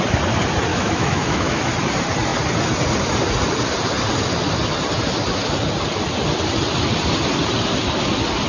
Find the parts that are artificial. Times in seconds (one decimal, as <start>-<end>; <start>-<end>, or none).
0.7-1.7